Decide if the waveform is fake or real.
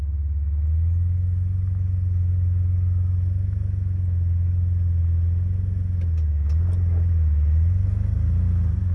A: real